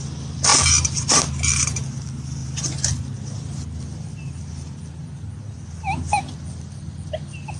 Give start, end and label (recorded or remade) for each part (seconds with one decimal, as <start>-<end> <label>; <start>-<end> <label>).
0.0-7.6 recorded